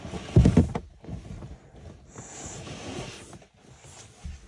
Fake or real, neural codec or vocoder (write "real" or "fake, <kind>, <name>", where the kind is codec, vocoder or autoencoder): real